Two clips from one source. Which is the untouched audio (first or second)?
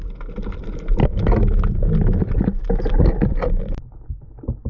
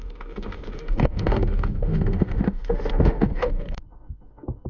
first